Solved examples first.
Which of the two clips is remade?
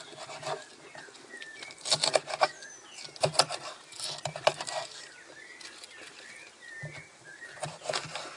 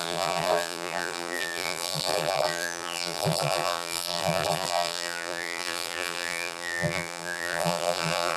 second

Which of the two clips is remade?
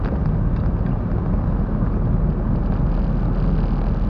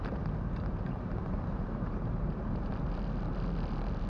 second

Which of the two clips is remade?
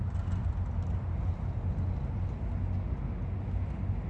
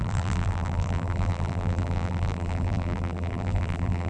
second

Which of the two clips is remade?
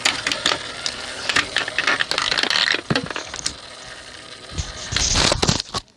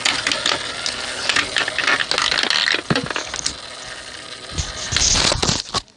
first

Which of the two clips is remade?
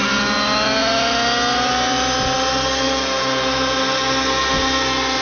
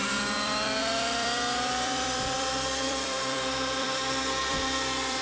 second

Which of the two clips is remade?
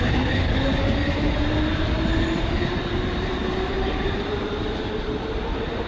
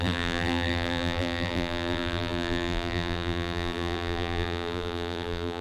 second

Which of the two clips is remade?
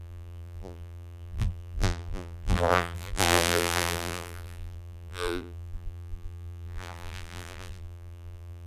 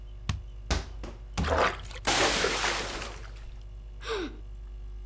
first